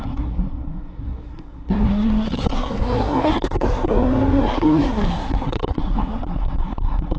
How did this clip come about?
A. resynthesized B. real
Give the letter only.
A